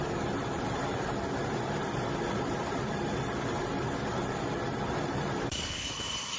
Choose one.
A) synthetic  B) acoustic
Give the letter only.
B